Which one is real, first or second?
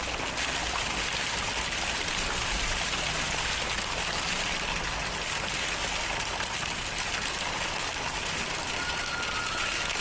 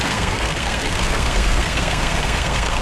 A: first